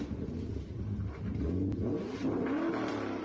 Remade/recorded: recorded